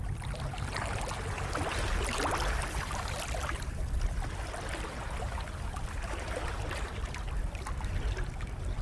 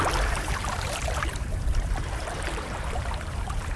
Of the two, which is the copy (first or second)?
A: second